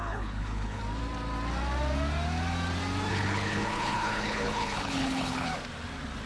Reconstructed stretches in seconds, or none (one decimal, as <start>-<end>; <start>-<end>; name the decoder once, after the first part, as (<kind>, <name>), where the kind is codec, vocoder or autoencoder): 0.0-0.8 (codec, HILCodec); 3.1-5.5